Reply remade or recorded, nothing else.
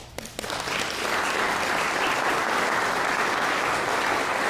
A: remade